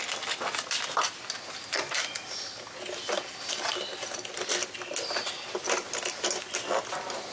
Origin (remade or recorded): recorded